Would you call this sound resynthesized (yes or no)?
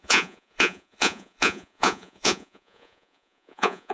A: yes